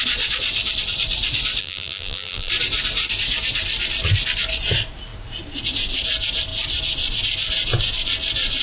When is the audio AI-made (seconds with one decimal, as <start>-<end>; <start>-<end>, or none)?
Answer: 1.6-2.5